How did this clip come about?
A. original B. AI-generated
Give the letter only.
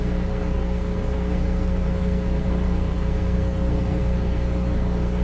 B